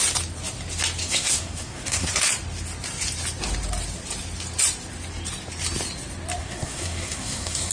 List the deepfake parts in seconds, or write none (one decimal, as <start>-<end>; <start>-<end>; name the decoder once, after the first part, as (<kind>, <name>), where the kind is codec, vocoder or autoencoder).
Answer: 1.0-2.1 (codec, SNAC); 6.4-7.7